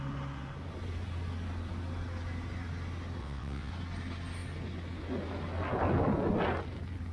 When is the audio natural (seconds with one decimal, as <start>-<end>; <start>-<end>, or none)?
0.0-3.2; 3.7-7.1